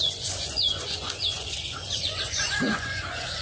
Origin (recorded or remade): remade